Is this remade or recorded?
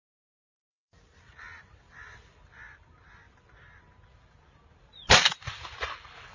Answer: recorded